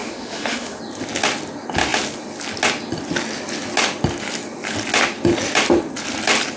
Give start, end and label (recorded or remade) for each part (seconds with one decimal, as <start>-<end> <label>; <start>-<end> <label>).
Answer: 0.0-0.8 remade; 0.8-6.6 recorded